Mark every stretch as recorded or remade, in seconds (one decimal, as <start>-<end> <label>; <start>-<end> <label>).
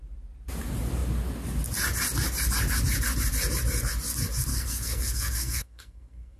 0.0-4.5 recorded; 4.5-6.4 remade